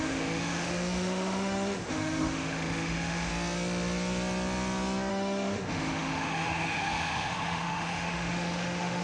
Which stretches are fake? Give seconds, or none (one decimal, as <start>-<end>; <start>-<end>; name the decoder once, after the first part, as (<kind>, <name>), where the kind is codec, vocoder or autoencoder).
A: 0.0-3.3 (autoencoder, DAC-VAE); 5.1-9.0